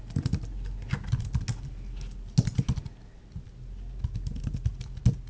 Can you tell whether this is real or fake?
real